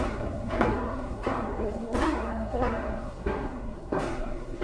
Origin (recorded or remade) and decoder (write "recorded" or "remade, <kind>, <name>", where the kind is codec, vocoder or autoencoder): remade, codec, SNAC